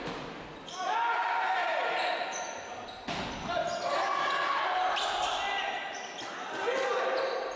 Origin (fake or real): real